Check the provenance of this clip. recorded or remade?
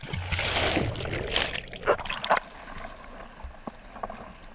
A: recorded